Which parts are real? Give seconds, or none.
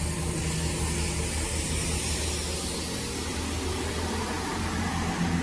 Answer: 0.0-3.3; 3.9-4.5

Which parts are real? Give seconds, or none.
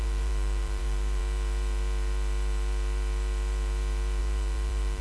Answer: 1.2-4.2